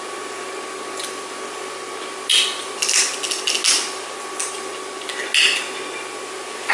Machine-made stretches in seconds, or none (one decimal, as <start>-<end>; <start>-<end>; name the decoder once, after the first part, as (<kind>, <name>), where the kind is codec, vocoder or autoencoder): none